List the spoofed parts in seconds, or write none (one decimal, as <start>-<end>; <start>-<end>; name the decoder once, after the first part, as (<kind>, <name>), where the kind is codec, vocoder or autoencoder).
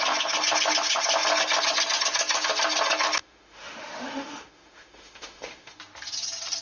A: 3.2-5.8 (autoencoder, DAC-VAE)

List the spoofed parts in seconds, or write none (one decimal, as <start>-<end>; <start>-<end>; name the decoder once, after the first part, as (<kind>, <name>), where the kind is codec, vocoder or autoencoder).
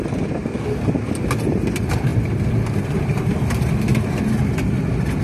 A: 0.0-0.4 (vocoder, BigVGAN v2); 1.4-2.1; 3.0-3.9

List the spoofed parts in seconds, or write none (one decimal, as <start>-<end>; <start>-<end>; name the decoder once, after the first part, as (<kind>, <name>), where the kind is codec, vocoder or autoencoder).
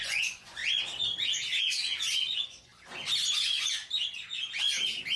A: 0.0-0.6 (vocoder, Vocos); 1.6-2.7; 3.3-3.8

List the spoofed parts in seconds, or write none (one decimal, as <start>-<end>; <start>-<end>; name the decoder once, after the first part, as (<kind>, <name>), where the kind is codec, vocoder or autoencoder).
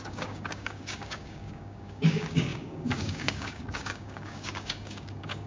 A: 0.0-5.5 (codec, DAC)